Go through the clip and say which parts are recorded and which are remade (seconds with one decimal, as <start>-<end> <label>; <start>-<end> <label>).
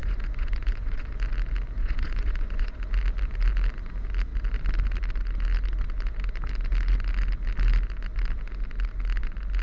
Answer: 0.0-1.1 remade; 1.1-1.8 recorded; 1.8-2.8 remade; 2.8-9.6 recorded